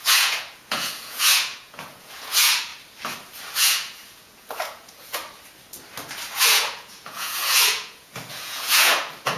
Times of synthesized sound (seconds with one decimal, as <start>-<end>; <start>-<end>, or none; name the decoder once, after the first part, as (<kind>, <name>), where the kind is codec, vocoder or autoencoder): 0.0-2.7 (vocoder, Vocos); 3.5-5.2; 6.4-9.4